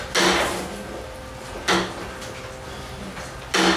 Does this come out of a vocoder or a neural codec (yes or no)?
no